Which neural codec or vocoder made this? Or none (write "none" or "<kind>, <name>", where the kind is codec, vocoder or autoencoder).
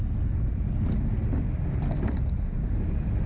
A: none